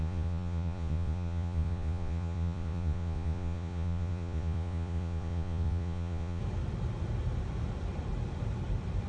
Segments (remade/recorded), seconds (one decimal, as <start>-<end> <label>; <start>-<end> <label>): 0.0-6.4 remade; 6.4-9.1 recorded